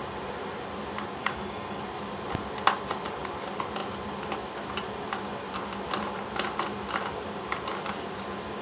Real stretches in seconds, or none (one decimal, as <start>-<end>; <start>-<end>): 0.0-1.2; 1.8-8.6